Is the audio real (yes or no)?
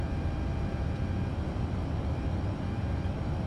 no